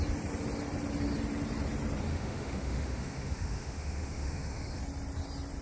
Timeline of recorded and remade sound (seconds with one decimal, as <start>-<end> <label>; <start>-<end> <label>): 0.0-2.1 recorded; 2.1-4.8 remade; 4.8-5.6 recorded